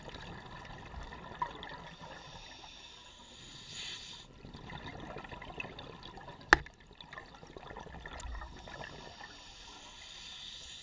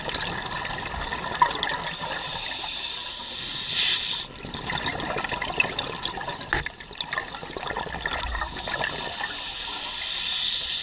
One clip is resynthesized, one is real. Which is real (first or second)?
first